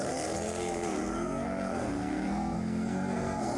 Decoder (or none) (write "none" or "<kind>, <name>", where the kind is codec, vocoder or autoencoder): codec, SNAC